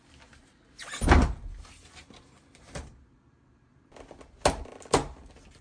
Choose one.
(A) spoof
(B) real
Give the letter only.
B